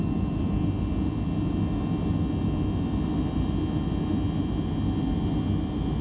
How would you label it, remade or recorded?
recorded